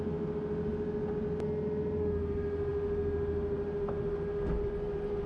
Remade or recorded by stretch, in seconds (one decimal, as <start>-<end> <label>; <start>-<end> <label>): 0.0-5.3 recorded